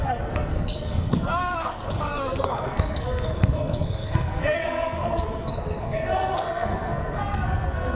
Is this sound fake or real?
fake